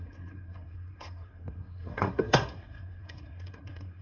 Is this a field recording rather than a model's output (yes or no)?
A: no